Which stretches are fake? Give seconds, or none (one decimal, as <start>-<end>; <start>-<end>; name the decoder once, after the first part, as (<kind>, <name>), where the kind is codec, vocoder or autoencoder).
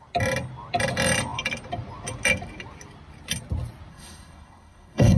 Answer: 3.9-5.2 (codec, SNAC)